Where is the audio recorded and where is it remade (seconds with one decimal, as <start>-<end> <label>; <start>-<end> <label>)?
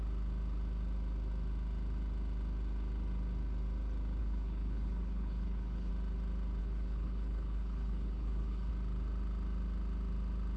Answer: 0.0-4.2 recorded; 4.2-5.9 remade; 5.9-6.6 recorded; 6.6-8.7 remade; 8.7-10.6 recorded